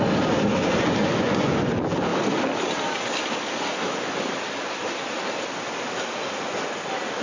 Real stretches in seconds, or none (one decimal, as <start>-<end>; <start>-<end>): 0.0-1.0; 1.7-7.2